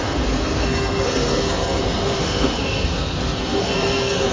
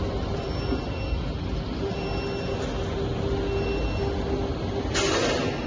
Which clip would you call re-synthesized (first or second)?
first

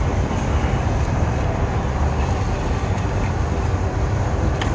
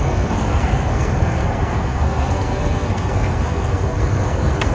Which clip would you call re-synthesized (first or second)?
second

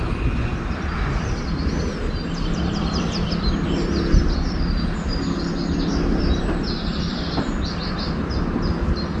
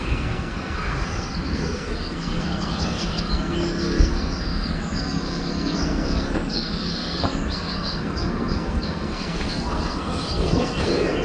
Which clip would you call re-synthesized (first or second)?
second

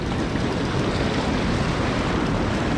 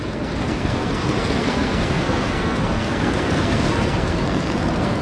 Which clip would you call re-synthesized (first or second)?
second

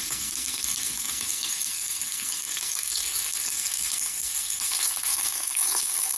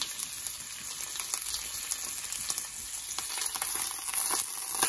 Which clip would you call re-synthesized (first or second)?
first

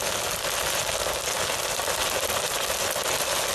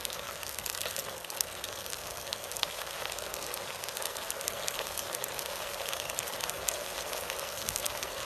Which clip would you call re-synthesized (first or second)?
second